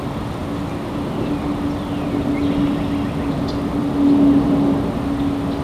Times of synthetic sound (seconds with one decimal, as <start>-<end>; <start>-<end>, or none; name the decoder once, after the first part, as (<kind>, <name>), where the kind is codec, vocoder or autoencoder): none